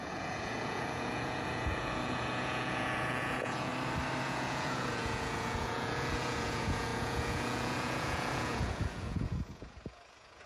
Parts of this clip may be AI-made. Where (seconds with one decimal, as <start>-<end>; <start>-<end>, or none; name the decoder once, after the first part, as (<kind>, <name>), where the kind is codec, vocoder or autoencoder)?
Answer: 0.0-3.7 (vocoder, Vocos); 4.2-10.5